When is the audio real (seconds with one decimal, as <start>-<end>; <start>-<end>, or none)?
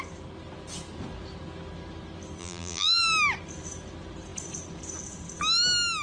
0.0-2.4; 3.0-6.0